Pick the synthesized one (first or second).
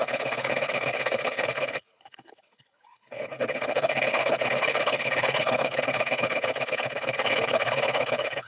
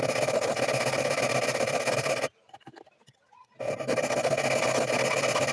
first